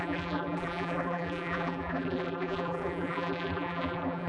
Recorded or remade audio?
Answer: remade